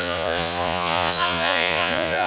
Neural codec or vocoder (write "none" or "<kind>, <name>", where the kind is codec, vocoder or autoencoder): vocoder, Vocos